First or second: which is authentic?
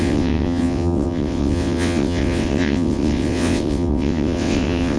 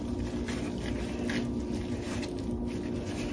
second